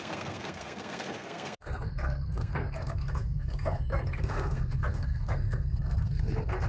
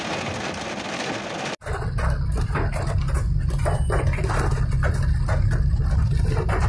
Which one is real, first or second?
second